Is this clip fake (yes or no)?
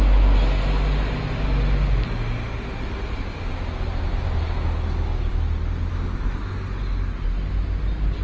no